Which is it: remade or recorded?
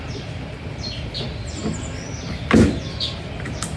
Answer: recorded